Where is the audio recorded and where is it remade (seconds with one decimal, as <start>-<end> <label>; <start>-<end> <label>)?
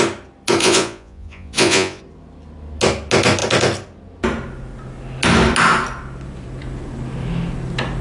0.0-0.6 recorded; 0.6-2.0 remade; 2.0-8.0 recorded